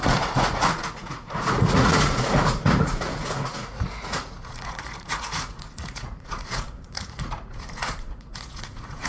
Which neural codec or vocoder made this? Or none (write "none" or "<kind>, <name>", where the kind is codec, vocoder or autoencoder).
vocoder, Vocos